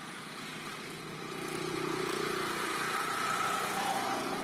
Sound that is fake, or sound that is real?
fake